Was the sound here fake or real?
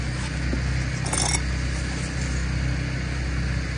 real